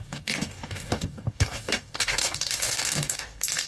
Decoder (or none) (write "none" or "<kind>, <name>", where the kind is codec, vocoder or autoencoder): codec, DAC